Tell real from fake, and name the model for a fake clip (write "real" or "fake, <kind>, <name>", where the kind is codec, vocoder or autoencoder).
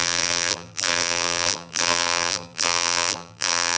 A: fake, vocoder, BigVGAN v2